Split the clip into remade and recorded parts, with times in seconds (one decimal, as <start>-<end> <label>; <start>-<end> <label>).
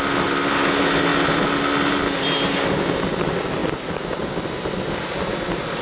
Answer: 0.0-5.8 recorded